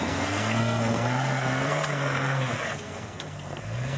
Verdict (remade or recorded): remade